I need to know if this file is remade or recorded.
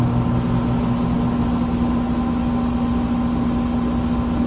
recorded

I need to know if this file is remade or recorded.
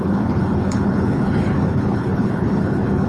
remade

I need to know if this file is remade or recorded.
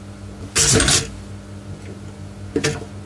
recorded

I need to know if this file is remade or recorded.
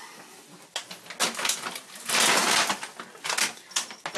recorded